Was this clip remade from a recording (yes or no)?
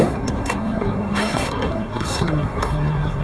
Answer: yes